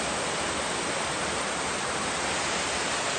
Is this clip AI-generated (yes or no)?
no